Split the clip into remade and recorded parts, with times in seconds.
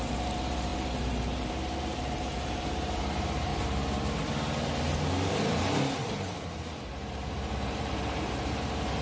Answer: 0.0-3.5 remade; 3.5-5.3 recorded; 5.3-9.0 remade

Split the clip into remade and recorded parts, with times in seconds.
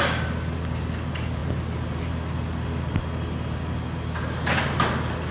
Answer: 0.0-5.3 recorded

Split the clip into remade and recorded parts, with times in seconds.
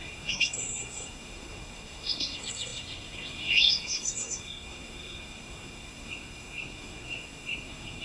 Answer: 0.0-8.0 remade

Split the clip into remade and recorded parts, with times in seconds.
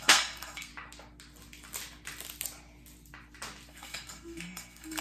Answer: 0.0-0.7 remade; 0.7-3.7 recorded; 3.7-5.0 remade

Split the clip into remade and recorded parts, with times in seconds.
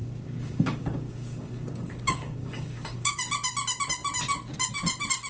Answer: 0.0-3.2 remade; 3.2-5.3 recorded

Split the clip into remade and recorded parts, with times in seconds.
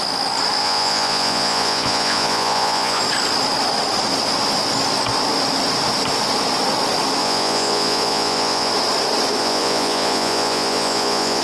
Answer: 0.0-0.6 recorded; 0.6-3.0 remade; 3.0-7.2 recorded; 7.2-8.7 remade; 8.7-9.4 recorded; 9.4-11.4 remade